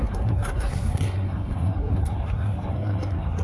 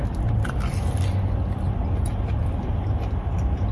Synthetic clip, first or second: first